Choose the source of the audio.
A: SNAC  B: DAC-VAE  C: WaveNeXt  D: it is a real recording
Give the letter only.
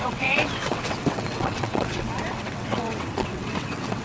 C